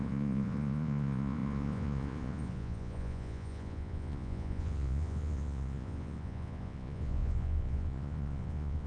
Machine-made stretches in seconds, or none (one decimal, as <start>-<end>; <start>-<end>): 0.0-8.9